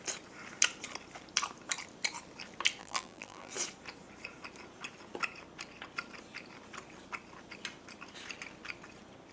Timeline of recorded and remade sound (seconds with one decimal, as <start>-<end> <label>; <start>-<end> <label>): 0.0-2.8 recorded; 2.8-3.5 remade; 3.5-9.3 recorded